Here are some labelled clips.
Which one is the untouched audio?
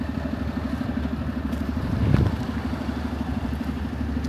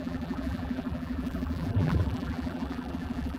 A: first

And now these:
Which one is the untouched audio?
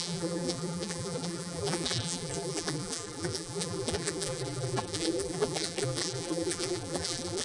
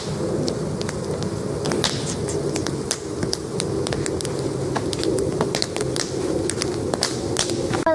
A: second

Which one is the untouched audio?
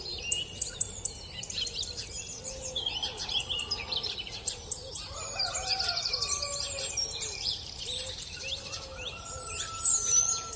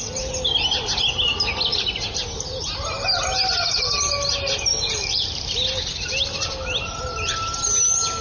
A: second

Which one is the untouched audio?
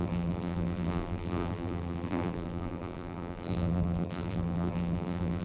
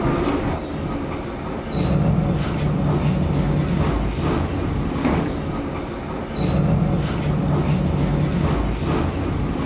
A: second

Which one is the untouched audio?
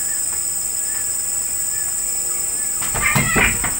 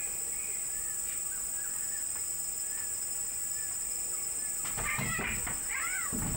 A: first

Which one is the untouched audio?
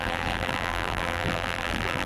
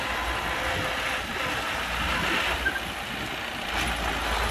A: second